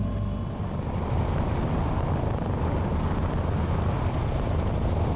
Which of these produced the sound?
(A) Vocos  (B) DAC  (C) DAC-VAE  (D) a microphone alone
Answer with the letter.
D